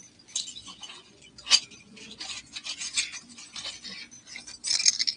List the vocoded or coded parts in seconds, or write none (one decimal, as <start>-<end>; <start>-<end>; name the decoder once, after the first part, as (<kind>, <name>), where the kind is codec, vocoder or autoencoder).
0.6-3.7 (vocoder, Vocos)